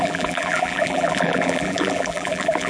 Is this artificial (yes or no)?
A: yes